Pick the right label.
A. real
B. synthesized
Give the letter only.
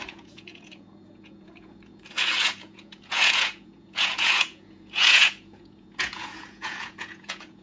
B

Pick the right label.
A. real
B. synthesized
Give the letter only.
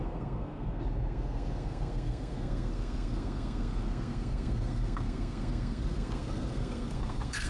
B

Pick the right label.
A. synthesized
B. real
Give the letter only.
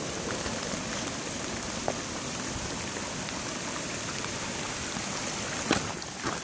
B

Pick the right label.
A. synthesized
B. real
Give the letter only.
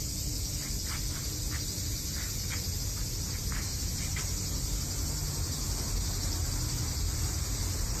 B